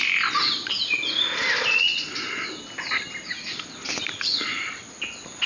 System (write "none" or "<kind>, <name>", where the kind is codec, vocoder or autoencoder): none